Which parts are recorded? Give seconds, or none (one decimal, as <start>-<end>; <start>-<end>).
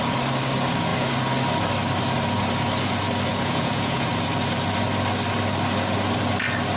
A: 0.0-3.3; 4.1-6.8